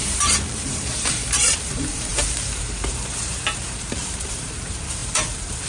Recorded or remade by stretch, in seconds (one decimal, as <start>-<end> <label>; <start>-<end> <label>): 0.0-5.7 remade